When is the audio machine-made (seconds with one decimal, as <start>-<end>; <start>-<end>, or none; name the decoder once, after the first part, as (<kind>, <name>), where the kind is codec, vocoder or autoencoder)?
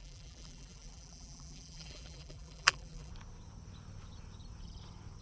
0.0-3.1 (vocoder, BigVGAN v2)